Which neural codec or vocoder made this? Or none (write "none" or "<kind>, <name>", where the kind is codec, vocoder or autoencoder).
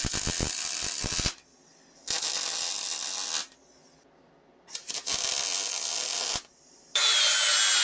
none